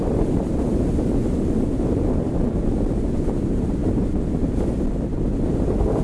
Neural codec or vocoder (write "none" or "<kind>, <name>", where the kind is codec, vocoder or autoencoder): none